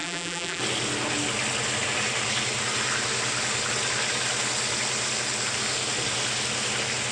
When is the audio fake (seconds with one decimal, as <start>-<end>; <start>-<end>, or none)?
0.0-0.6

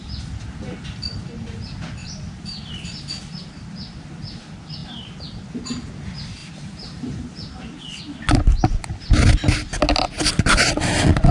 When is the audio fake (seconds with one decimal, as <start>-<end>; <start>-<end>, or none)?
2.0-3.1; 6.4-7.2

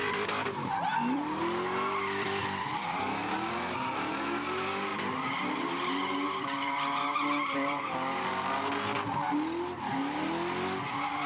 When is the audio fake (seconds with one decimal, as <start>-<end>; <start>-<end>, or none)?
0.0-1.4; 2.4-3.0; 4.9-7.8

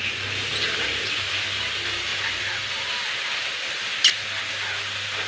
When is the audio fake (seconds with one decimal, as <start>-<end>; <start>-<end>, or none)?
0.0-3.9; 4.5-5.3

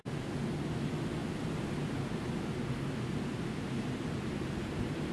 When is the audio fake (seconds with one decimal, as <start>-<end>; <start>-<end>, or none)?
none